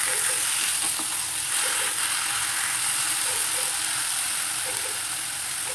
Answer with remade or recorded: recorded